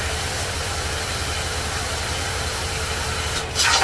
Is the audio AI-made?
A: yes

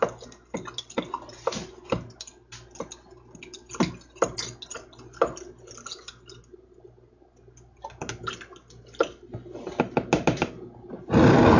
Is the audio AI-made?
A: no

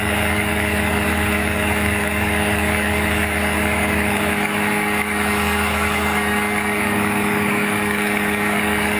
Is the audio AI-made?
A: yes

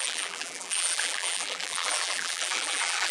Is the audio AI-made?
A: yes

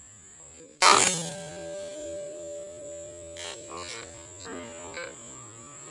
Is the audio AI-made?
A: no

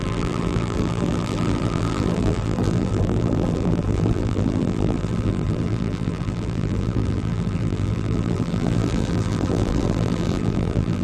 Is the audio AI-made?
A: yes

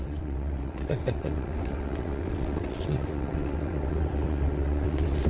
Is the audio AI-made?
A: yes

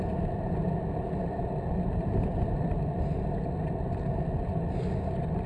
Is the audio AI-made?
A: no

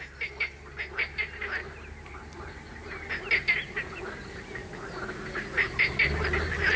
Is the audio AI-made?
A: no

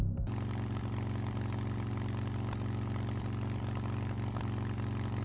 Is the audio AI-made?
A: no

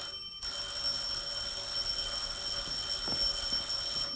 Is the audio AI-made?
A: no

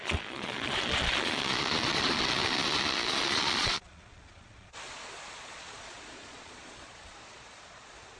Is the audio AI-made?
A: yes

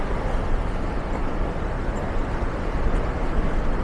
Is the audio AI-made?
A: no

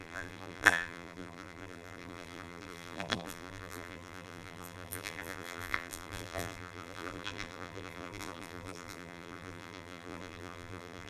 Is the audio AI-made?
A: yes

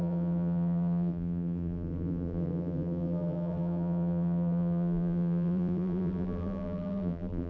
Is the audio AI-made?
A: yes